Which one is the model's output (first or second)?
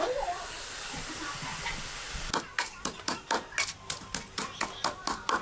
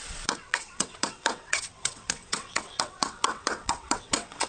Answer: second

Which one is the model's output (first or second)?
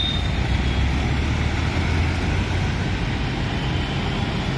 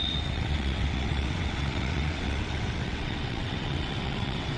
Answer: second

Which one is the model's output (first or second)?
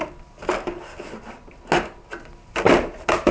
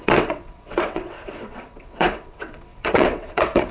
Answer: second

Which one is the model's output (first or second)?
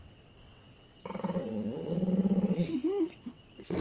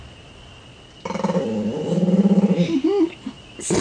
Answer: first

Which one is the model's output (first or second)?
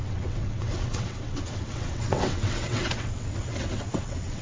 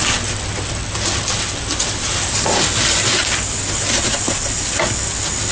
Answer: first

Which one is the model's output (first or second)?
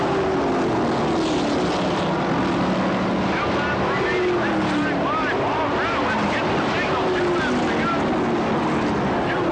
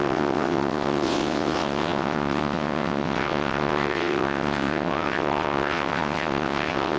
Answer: second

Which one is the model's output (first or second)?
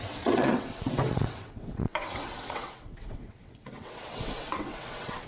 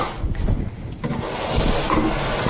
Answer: first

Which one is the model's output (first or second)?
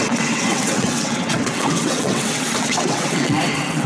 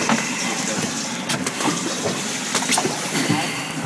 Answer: first